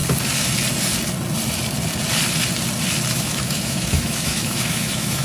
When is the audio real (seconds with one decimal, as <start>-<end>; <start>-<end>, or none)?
0.0-3.1